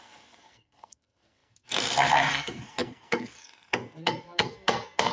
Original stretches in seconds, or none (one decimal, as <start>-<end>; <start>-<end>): none